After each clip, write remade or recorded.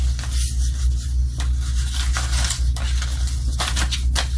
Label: recorded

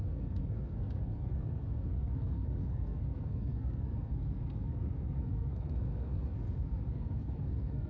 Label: remade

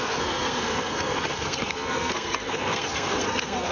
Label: remade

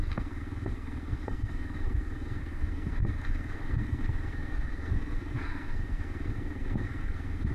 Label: remade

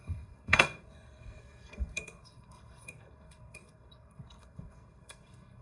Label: remade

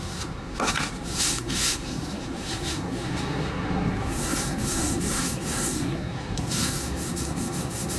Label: remade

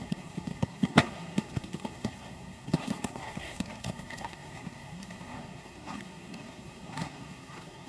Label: remade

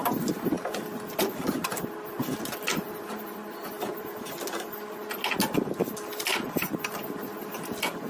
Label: recorded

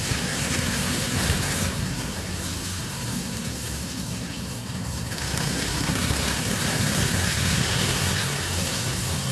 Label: remade